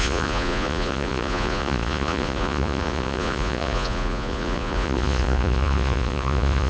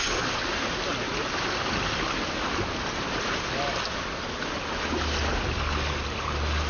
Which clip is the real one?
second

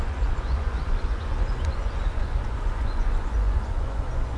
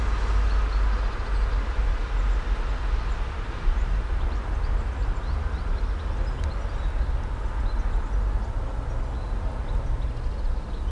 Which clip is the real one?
second